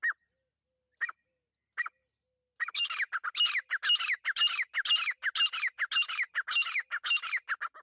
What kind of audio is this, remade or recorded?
recorded